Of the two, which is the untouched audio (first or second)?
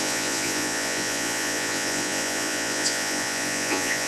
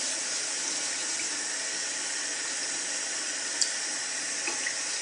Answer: second